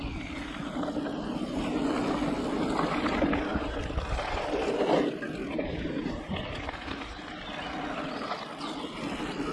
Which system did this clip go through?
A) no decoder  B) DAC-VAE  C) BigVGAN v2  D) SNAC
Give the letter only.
A